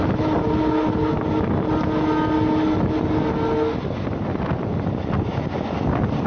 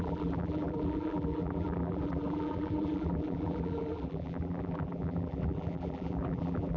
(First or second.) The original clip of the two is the first